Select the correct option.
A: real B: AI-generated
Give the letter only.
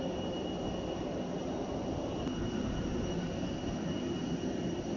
A